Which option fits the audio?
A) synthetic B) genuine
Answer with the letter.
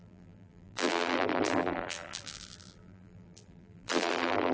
A